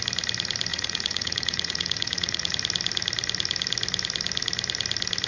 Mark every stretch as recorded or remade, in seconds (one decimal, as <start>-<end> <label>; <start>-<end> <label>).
0.0-0.7 recorded; 0.7-2.5 remade; 2.5-5.3 recorded

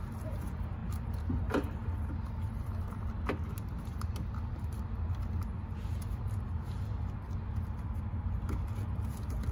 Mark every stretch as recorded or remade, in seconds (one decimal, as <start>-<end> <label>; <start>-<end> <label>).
0.0-9.5 recorded

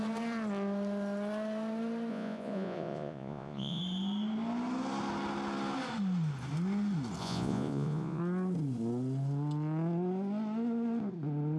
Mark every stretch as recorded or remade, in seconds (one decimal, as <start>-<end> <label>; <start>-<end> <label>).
0.0-2.1 recorded; 2.1-3.8 remade; 3.8-7.2 recorded; 7.2-8.2 remade; 8.2-11.6 recorded